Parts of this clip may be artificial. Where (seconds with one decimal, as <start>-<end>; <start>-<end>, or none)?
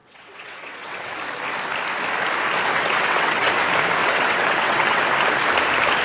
0.0-1.1; 2.7-3.5; 4.0-5.0